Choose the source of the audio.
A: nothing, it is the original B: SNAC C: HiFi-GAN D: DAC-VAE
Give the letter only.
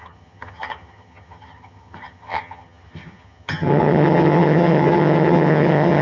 C